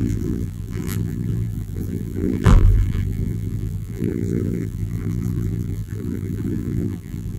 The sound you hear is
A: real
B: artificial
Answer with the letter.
B